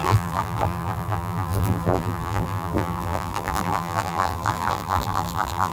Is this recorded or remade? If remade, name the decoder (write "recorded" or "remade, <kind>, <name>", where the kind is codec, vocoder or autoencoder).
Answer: remade, vocoder, BigVGAN v2